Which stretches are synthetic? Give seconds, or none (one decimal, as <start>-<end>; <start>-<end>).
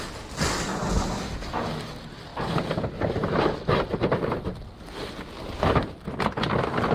none